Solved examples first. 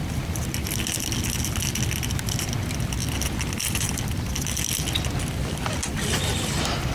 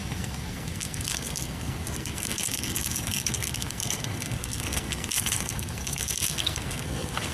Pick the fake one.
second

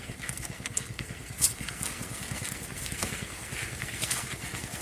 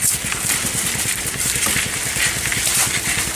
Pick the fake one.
first